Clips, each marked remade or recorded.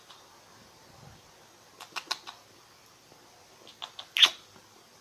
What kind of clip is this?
recorded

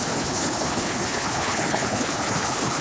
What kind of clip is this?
remade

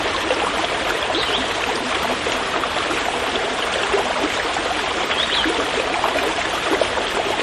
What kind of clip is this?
recorded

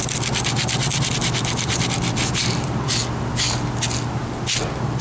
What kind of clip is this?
recorded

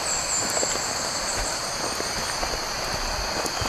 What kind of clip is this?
recorded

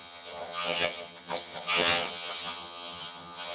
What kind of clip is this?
remade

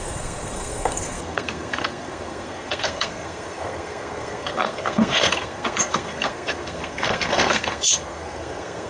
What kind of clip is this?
remade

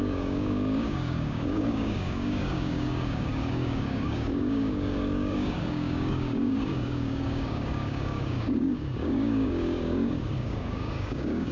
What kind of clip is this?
remade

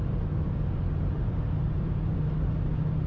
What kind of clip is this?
recorded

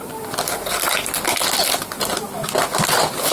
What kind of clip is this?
recorded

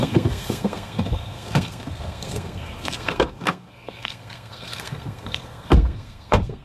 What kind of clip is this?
remade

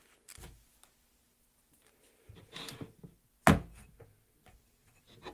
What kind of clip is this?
recorded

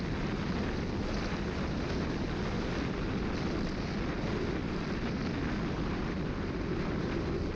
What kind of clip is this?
recorded